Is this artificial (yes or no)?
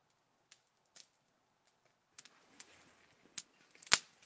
no